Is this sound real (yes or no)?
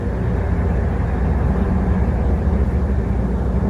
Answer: yes